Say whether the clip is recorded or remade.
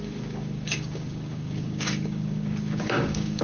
remade